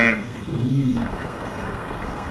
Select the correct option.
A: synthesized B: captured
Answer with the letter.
A